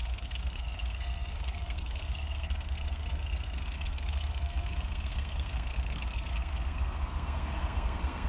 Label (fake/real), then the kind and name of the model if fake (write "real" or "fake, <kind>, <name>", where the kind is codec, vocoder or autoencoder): fake, codec, SNAC